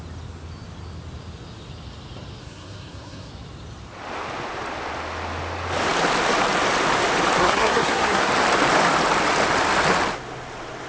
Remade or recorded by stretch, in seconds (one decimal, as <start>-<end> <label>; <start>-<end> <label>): 0.0-2.4 recorded; 2.4-3.3 remade; 3.3-7.4 recorded; 7.4-8.3 remade; 8.3-10.9 recorded